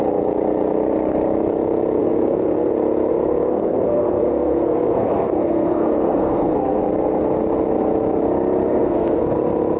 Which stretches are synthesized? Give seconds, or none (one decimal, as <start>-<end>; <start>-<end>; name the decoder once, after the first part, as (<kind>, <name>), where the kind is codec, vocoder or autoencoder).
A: 2.0-2.7 (codec, SNAC); 3.1-6.8; 8.7-9.2